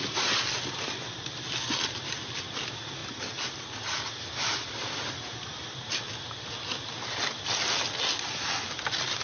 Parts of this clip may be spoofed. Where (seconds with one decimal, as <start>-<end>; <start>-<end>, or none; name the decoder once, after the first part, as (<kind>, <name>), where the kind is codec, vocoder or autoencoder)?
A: none